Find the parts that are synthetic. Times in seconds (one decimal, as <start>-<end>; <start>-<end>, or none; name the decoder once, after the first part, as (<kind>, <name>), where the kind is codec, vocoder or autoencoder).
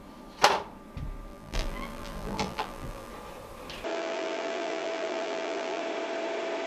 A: 1.3-3.1 (vocoder, BigVGAN v2); 3.9-5.8